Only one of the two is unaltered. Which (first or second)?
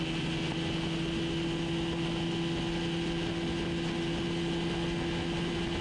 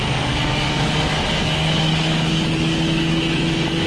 first